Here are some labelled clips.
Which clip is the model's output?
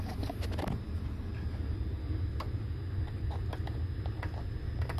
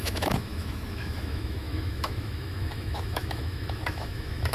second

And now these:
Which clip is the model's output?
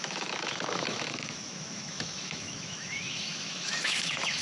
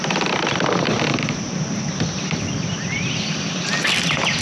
first